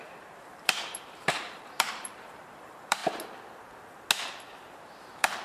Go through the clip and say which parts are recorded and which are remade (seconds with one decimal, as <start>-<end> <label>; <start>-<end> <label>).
0.0-3.0 remade; 3.0-4.7 recorded; 4.7-5.4 remade

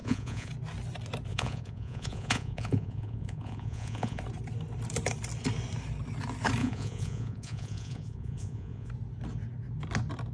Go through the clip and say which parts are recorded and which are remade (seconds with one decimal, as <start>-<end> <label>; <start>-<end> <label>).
0.0-0.5 remade; 0.5-1.3 recorded; 1.3-4.2 remade; 4.2-6.6 recorded; 6.6-8.9 remade; 8.9-10.3 recorded

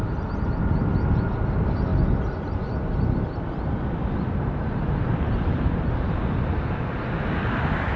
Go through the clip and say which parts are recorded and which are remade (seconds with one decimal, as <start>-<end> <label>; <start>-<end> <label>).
0.0-8.0 recorded

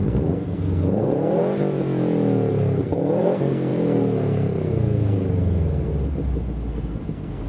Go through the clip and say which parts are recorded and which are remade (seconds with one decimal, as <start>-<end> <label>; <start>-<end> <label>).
0.0-1.4 remade; 1.4-2.5 recorded; 2.5-5.9 remade; 5.9-6.7 recorded; 6.7-7.5 remade

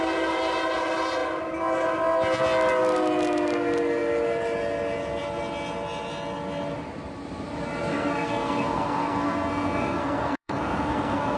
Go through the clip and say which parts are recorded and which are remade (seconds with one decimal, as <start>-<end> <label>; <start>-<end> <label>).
0.0-7.9 recorded; 7.9-11.4 remade

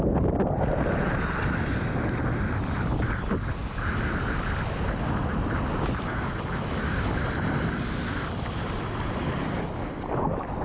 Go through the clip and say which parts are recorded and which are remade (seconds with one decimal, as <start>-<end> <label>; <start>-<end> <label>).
0.0-10.6 recorded

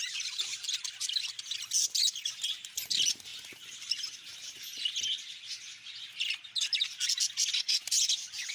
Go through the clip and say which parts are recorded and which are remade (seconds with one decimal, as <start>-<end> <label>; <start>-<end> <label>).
0.0-8.5 recorded